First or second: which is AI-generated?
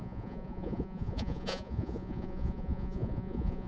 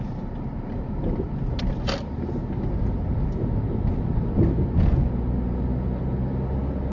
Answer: first